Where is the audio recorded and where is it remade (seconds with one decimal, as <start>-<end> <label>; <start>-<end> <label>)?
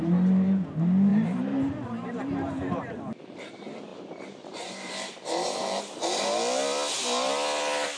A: 0.0-1.1 recorded; 1.1-3.0 remade; 3.0-3.9 recorded; 3.9-5.8 remade; 5.8-8.0 recorded